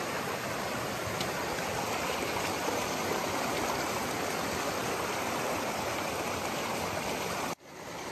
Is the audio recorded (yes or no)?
yes